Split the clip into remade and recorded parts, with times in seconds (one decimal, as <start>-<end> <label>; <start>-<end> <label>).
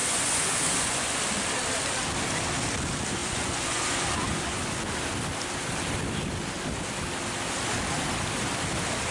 0.0-1.2 remade; 1.2-3.2 recorded; 3.2-4.8 remade; 4.8-9.1 recorded